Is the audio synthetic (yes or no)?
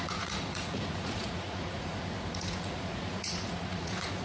yes